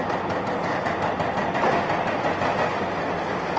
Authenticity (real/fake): real